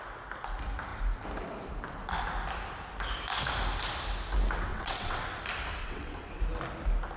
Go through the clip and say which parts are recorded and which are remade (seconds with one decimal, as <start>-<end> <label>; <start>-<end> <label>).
0.0-4.7 recorded; 4.7-5.2 remade; 5.2-5.8 recorded; 5.8-6.4 remade; 6.4-7.2 recorded